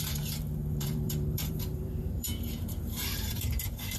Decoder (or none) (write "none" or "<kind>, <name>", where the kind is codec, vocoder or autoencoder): vocoder, BigVGAN v2